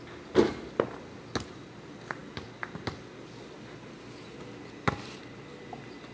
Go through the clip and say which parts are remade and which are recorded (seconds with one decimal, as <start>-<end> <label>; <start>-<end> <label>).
0.0-6.1 recorded

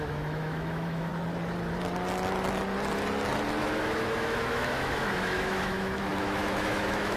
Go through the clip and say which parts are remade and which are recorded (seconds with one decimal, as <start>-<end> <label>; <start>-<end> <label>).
0.0-1.1 remade; 1.1-3.6 recorded; 3.6-7.2 remade

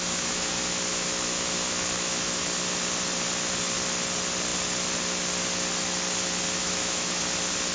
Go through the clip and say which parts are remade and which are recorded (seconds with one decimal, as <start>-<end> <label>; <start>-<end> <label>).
0.0-2.4 remade; 2.4-6.6 recorded; 6.6-7.2 remade; 7.2-7.7 recorded

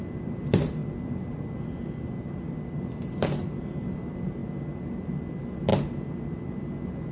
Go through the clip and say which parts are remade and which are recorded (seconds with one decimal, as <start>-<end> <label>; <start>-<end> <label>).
0.0-7.1 recorded

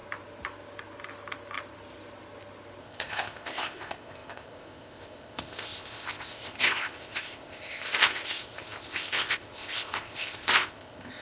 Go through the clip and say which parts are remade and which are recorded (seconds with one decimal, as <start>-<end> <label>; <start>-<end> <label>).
0.0-2.8 recorded; 2.8-11.2 remade